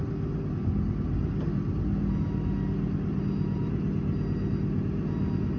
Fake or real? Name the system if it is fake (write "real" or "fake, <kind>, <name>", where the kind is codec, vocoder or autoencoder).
real